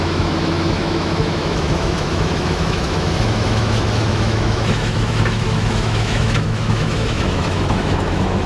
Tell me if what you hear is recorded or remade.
remade